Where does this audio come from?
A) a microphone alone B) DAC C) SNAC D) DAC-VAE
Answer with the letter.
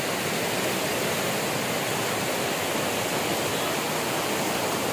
A